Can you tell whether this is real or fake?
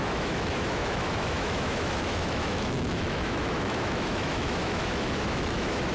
fake